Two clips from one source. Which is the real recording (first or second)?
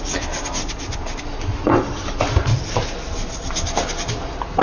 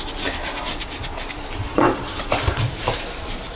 first